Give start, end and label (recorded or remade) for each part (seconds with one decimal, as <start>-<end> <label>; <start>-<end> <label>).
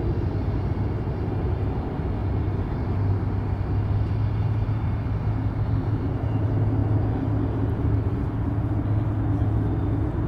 0.0-10.3 recorded